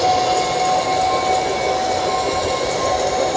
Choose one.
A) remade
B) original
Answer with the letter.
B